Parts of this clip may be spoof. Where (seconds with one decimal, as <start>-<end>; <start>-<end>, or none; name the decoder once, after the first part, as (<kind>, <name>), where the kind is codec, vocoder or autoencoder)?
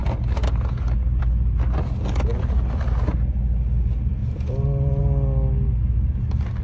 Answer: 2.3-3.0 (vocoder, BigVGAN v2)